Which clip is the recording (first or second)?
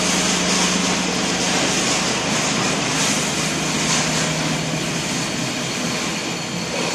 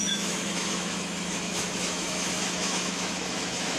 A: first